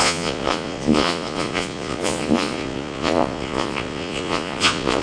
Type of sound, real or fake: fake